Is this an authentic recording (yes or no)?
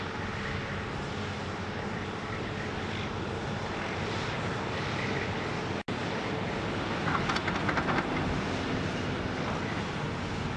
yes